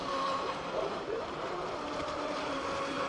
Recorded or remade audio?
remade